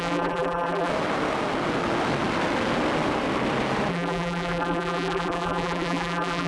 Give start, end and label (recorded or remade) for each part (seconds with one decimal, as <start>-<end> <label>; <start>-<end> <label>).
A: 0.0-0.9 remade; 0.9-3.9 recorded; 3.9-6.5 remade